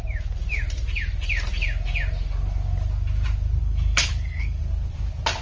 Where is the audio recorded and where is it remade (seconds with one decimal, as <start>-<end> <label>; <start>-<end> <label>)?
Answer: 0.0-3.6 recorded; 3.6-4.6 remade; 4.6-5.4 recorded